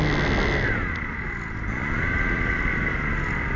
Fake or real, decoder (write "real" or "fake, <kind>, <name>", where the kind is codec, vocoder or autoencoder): real